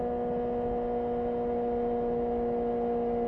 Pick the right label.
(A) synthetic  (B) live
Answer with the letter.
B